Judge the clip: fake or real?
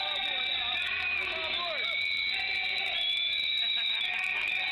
real